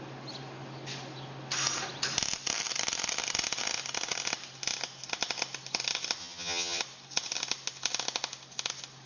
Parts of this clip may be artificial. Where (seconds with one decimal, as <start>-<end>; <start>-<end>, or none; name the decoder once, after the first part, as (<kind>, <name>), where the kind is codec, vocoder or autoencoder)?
6.2-6.8 (vocoder, HiFi-GAN)